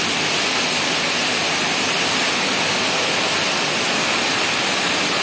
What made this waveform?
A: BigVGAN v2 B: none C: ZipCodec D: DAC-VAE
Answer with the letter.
A